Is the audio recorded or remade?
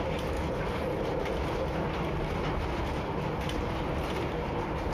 recorded